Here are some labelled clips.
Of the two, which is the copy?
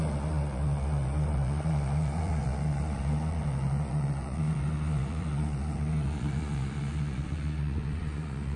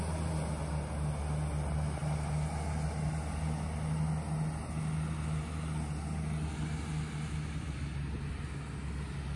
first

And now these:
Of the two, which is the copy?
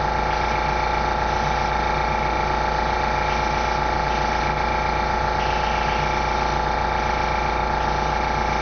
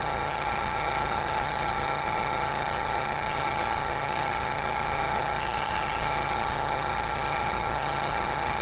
second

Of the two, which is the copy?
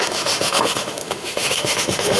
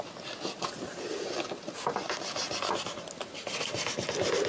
first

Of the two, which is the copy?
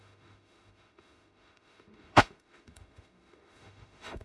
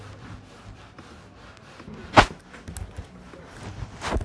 first